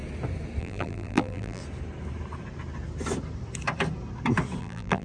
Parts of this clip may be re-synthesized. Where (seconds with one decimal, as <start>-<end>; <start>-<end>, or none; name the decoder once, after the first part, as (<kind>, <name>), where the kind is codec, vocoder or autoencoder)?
0.6-1.6 (vocoder, BigVGAN v2); 4.6-5.0